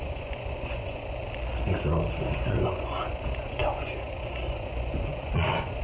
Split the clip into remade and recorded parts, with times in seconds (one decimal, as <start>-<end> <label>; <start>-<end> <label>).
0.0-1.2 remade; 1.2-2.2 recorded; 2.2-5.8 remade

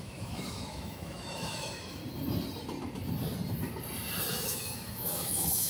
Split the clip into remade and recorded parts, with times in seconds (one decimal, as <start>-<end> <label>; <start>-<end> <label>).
0.0-2.0 remade; 2.0-4.3 recorded; 4.3-5.7 remade

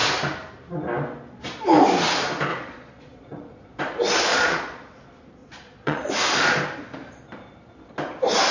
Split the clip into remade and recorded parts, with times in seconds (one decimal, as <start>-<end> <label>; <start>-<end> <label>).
0.0-2.5 recorded; 2.5-3.8 remade; 3.8-4.3 recorded; 4.3-4.9 remade; 4.9-5.4 recorded; 5.4-6.1 remade; 6.1-8.5 recorded

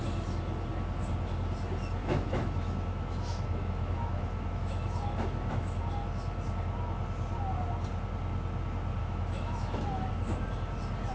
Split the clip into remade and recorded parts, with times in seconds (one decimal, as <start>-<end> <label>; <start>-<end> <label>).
0.0-2.0 recorded; 2.0-5.8 remade; 5.8-9.0 recorded; 9.0-10.1 remade; 10.1-11.1 recorded

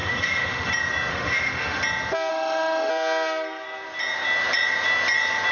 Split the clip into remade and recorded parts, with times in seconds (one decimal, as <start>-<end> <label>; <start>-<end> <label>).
0.0-0.7 remade; 0.7-1.1 recorded; 1.1-1.8 remade; 1.8-2.3 recorded; 2.3-2.9 remade; 2.9-5.5 recorded

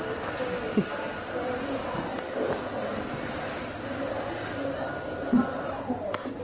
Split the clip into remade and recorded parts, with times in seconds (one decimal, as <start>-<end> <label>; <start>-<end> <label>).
0.0-2.1 recorded; 2.1-2.6 remade; 2.6-6.4 recorded

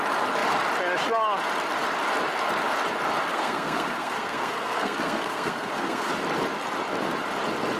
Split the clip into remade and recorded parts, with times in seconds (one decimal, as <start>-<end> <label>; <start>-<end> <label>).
0.0-3.3 recorded; 3.3-6.1 remade; 6.1-7.8 recorded